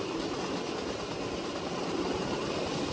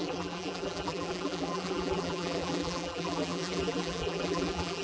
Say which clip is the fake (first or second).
second